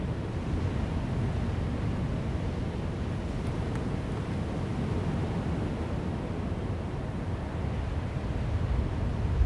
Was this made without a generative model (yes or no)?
yes